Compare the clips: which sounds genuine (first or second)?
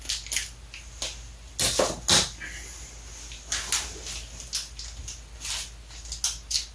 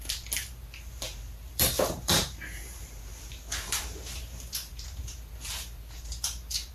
first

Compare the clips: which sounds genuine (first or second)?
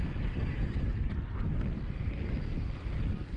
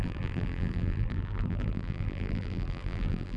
first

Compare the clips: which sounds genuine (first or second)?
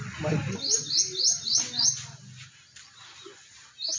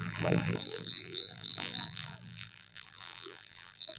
first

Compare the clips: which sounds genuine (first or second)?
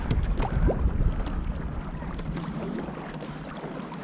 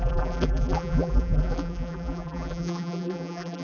first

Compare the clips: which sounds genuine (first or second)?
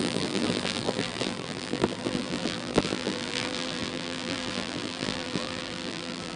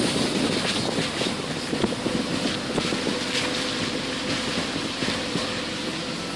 second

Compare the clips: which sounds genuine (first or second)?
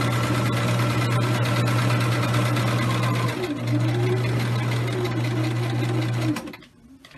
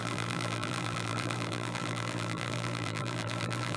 first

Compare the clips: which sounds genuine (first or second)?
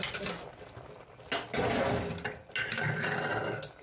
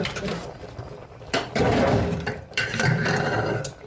first